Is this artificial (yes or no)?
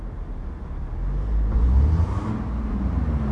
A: no